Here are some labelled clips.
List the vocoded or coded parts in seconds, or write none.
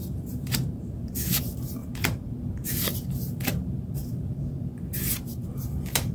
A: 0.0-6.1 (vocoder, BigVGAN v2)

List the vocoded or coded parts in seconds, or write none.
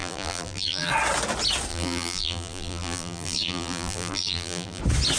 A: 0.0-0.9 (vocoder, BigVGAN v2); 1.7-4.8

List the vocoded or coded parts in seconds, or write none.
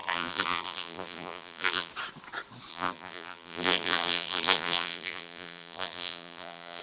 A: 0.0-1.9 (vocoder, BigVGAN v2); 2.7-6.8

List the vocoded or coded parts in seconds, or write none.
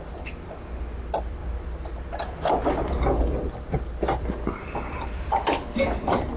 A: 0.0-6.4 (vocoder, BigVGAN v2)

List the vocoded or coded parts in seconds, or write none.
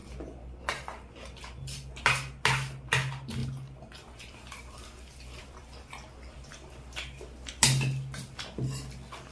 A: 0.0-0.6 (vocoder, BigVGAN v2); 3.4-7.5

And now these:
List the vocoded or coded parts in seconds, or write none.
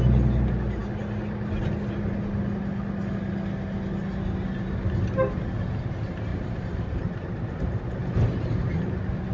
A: 6.3-7.8 (vocoder, BigVGAN v2)